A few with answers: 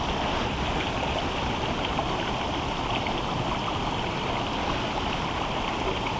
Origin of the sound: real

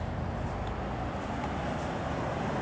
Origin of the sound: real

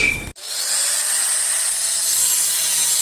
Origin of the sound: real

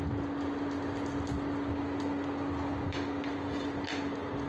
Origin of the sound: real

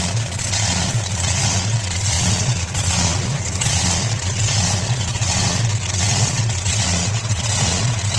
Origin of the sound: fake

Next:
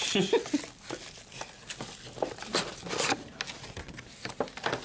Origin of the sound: real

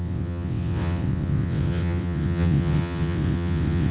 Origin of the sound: fake